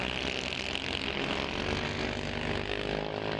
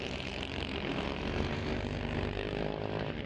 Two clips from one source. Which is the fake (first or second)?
second